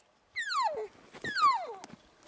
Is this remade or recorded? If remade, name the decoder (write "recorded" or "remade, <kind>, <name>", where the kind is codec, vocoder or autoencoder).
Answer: recorded